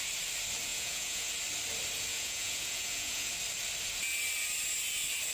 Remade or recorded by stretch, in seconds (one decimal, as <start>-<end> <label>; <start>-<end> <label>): 0.0-0.7 recorded; 0.7-1.3 remade; 1.3-2.1 recorded; 2.1-3.3 remade; 3.3-5.3 recorded